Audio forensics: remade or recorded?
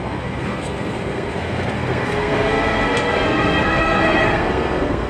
remade